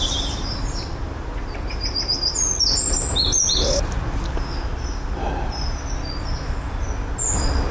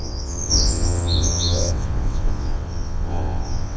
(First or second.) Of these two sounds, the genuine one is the first